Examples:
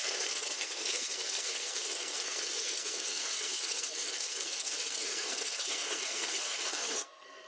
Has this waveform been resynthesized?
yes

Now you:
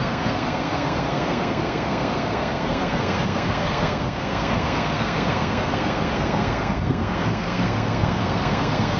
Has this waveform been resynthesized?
yes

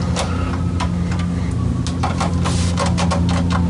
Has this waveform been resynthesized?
no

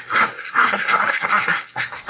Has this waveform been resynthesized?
yes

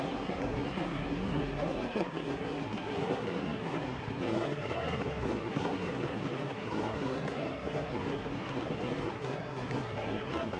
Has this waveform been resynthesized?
yes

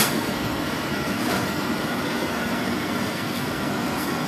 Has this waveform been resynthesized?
yes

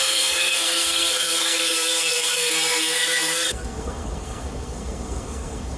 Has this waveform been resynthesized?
yes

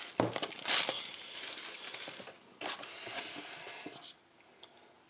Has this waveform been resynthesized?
no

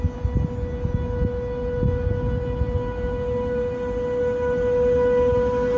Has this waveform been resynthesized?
no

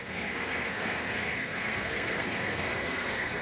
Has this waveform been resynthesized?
yes